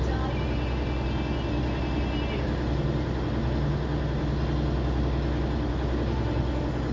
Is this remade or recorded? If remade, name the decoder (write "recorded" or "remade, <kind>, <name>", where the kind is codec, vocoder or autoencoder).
recorded